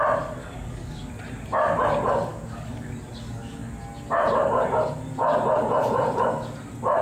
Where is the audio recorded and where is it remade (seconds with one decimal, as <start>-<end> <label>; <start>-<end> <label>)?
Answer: 0.0-0.4 recorded; 0.4-1.1 remade; 1.1-2.3 recorded; 2.3-3.0 remade; 3.0-7.0 recorded